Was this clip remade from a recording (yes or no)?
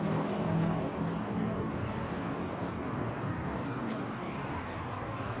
yes